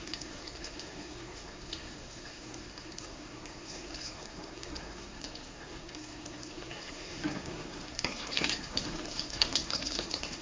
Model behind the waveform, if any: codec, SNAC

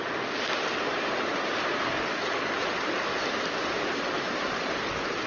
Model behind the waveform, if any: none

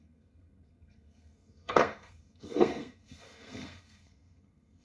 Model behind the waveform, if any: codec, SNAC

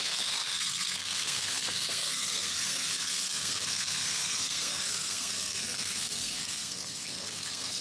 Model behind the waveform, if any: codec, SNAC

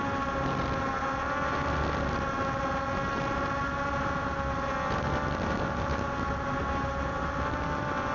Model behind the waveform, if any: none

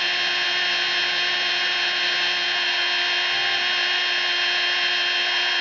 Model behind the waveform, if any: none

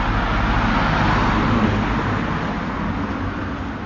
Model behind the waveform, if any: none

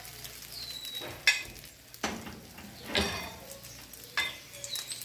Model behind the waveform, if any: none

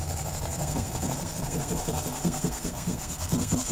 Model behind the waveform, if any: codec, SNAC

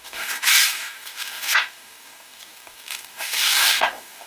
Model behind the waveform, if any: codec, DAC